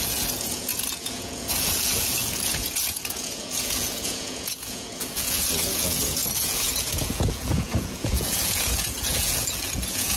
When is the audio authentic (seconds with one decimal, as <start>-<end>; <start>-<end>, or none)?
none